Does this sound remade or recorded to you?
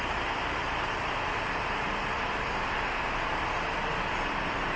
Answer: remade